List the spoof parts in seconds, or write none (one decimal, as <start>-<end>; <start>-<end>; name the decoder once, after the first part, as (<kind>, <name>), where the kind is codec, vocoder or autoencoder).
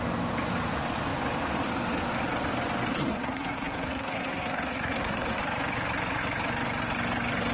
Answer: 3.0-5.4 (codec, SNAC)